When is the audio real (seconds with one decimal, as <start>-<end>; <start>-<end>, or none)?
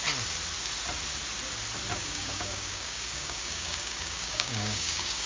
0.0-1.9